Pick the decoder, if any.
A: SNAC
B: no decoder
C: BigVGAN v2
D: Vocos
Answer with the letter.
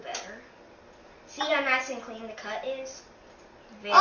B